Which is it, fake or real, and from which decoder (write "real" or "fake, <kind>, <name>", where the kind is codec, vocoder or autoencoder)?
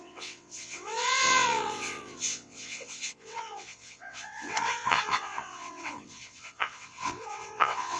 fake, vocoder, WaveNeXt